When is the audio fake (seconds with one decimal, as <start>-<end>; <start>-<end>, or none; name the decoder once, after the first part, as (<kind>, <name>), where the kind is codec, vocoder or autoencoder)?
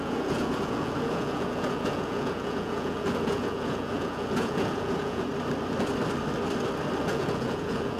0.0-5.3 (vocoder, Vocos); 7.0-8.0